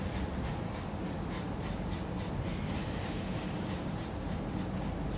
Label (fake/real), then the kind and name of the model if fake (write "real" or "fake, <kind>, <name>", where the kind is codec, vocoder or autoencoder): real